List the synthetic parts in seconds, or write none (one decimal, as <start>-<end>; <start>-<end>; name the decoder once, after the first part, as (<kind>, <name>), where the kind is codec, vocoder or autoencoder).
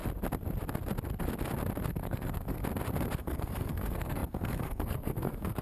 1.9-2.6 (codec, SNAC); 3.2-5.6